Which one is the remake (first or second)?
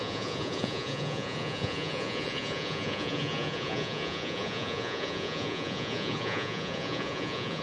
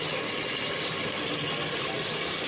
first